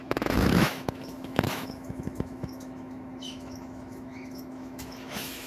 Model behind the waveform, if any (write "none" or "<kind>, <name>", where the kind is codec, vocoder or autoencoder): autoencoder, DAC-VAE